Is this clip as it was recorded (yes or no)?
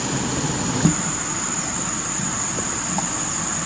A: yes